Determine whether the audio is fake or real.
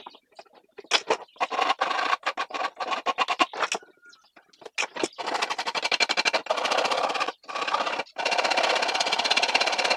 real